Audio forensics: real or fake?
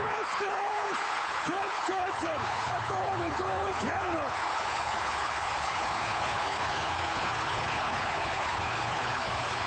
fake